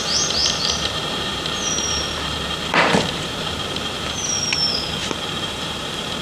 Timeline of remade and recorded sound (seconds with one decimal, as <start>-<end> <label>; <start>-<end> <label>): 0.0-0.4 recorded; 0.4-4.1 remade; 4.1-5.0 recorded; 5.0-6.2 remade